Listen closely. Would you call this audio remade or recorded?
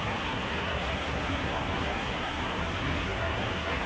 remade